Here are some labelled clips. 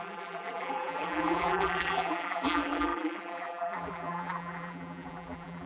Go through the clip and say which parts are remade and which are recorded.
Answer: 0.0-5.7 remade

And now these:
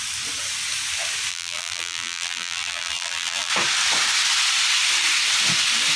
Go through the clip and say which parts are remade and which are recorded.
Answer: 0.0-1.3 recorded; 1.3-3.5 remade; 3.5-6.0 recorded